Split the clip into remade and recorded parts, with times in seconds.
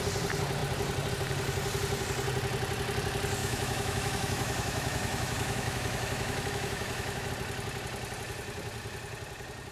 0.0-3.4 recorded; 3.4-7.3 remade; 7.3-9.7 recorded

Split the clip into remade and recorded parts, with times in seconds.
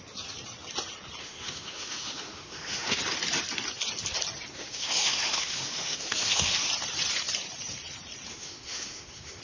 0.0-1.2 recorded; 1.2-3.0 remade; 3.0-4.6 recorded; 4.6-6.7 remade; 6.7-8.3 recorded; 8.3-9.4 remade